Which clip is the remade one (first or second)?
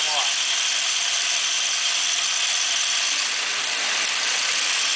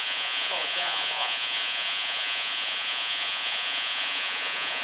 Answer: second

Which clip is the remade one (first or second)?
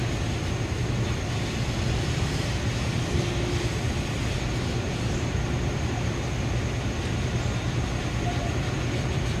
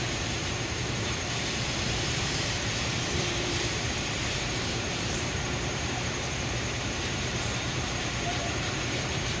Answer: second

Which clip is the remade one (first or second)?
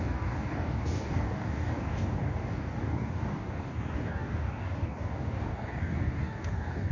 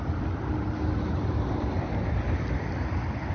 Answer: first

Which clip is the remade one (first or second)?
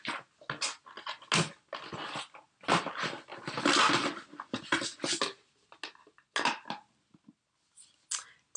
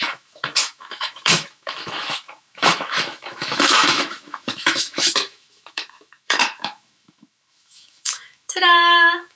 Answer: second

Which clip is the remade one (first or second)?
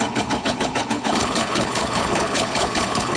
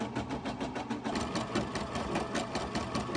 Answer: first